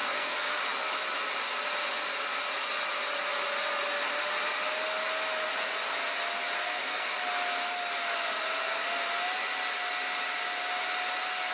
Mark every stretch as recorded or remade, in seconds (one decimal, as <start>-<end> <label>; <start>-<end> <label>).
0.0-0.6 remade; 0.6-6.6 recorded; 6.6-7.1 remade; 7.1-11.5 recorded